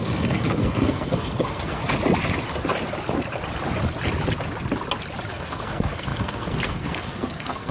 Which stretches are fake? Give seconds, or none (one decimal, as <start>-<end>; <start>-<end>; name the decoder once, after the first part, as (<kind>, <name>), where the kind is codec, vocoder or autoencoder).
0.0-1.8 (codec, SNAC); 5.3-7.7